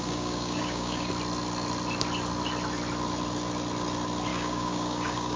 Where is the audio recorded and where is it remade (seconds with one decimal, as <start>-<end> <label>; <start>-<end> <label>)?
0.0-1.1 remade; 1.1-4.3 recorded; 4.3-5.4 remade